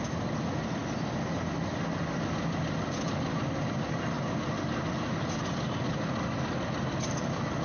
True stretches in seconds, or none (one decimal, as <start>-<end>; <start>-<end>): 0.0-7.6